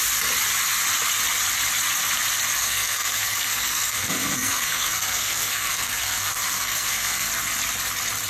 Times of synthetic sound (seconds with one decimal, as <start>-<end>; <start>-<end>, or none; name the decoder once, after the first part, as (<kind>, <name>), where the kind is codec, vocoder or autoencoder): 2.6-7.3 (codec, SNAC)